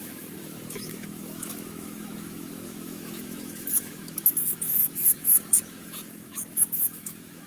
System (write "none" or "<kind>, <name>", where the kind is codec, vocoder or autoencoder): autoencoder, DAC-VAE